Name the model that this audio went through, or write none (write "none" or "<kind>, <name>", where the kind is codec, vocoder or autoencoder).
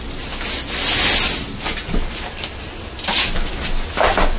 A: none